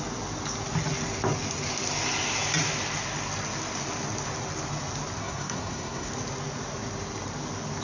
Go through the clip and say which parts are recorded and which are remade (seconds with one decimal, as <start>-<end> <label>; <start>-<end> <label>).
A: 0.0-5.2 recorded; 5.2-6.1 remade; 6.1-7.8 recorded

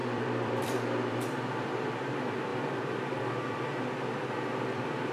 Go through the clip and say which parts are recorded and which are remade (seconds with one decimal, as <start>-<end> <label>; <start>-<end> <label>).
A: 0.0-5.1 remade

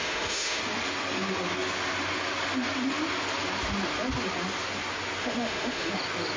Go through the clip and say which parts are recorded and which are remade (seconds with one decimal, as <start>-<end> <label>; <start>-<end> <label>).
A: 0.0-0.6 remade; 0.6-5.2 recorded; 5.2-5.9 remade; 5.9-6.4 recorded

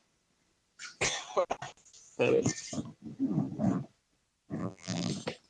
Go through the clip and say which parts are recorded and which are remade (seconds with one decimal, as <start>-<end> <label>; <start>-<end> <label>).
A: 0.0-4.6 recorded; 4.6-5.1 remade; 5.1-5.5 recorded

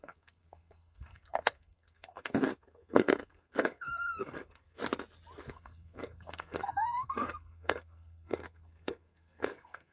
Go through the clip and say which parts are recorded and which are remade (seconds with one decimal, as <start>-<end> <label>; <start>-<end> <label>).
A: 0.0-4.8 remade; 4.8-5.4 recorded; 5.4-9.9 remade